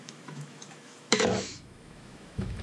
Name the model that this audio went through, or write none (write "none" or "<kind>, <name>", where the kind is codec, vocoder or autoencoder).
autoencoder, DAC-VAE